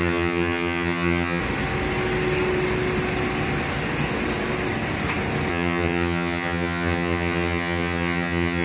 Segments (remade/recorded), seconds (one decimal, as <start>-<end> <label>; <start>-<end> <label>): 0.0-1.4 remade; 1.4-5.5 recorded; 5.5-8.6 remade